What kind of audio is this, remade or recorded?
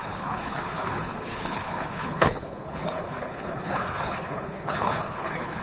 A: remade